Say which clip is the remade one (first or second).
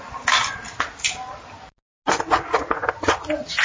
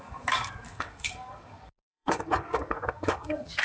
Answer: second